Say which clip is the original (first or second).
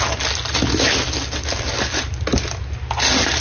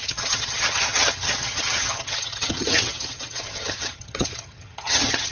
first